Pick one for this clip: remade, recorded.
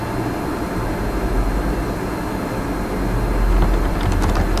recorded